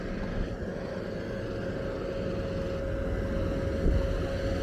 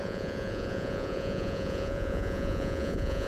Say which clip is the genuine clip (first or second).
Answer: first